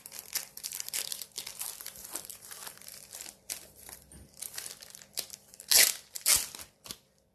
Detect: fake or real fake